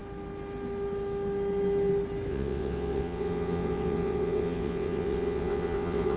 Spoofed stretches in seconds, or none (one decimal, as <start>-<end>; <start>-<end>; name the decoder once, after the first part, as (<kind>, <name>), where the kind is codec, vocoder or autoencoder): 2.3-6.2 (vocoder, WaveNeXt)

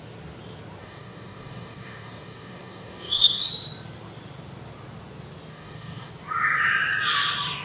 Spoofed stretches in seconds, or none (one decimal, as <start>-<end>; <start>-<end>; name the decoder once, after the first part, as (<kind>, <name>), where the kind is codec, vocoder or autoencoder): 0.8-3.5 (codec, DAC); 5.5-6.1

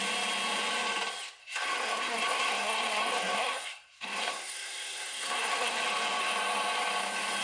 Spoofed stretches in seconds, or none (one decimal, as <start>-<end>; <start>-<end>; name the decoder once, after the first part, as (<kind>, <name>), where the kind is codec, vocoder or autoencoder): 1.4-5.8 (codec, SNAC)

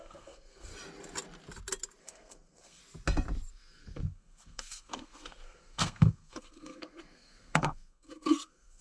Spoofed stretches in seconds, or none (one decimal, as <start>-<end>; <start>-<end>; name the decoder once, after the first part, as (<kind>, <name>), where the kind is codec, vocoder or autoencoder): 0.0-0.7 (codec, SNAC); 2.0-2.8; 3.5-8.8

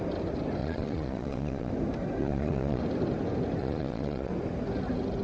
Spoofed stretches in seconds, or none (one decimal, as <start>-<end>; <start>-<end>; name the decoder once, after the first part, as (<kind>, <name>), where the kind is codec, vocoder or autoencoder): 0.6-1.7 (vocoder, Vocos); 2.2-2.8; 3.6-4.3

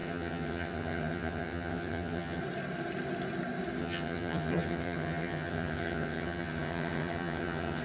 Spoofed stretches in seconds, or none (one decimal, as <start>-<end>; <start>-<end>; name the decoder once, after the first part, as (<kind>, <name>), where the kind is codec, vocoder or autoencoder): 0.0-2.4 (vocoder, HiFi-GAN); 3.8-7.8

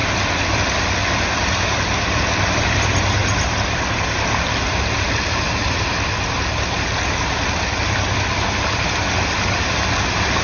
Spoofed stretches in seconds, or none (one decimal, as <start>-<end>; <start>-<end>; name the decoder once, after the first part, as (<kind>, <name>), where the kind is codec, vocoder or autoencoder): none